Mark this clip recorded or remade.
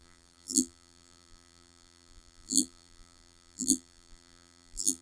remade